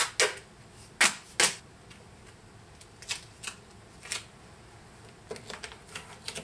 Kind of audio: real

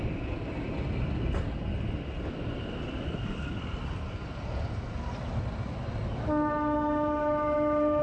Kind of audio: real